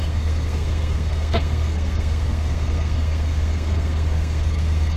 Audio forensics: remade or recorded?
remade